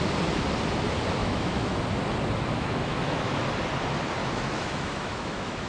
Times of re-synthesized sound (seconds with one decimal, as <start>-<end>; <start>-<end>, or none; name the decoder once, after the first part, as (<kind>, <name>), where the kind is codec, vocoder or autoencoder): 1.2-1.8 (autoencoder, DAC-VAE); 2.5-3.4; 4.2-5.7